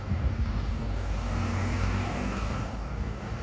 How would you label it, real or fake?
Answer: fake